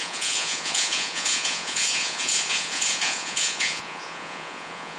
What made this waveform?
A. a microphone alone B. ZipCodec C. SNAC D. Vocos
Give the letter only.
D